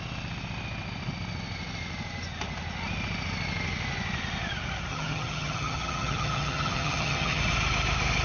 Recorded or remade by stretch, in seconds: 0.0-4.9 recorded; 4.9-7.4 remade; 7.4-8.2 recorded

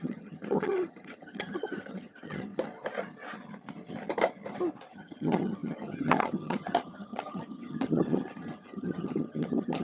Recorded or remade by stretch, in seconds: 0.0-2.5 remade; 2.5-4.9 recorded; 4.9-9.8 remade

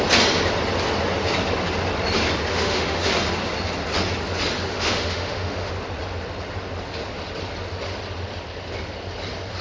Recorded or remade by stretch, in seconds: 0.0-2.5 recorded; 2.5-3.1 remade; 3.1-4.7 recorded; 4.7-5.7 remade; 5.7-9.6 recorded

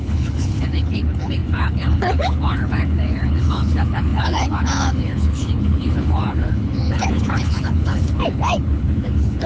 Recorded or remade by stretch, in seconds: 0.0-9.5 remade

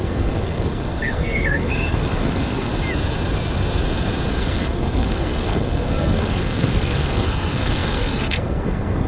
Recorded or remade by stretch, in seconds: 0.0-2.7 remade; 2.7-4.3 recorded; 4.3-9.1 remade

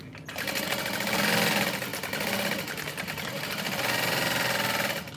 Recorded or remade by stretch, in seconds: 0.0-5.2 recorded

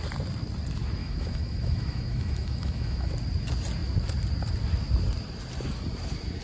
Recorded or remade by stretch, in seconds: 0.0-1.0 recorded; 1.0-3.1 remade; 3.1-6.4 recorded

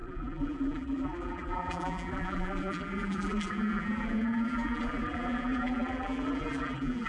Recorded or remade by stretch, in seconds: 0.0-7.1 remade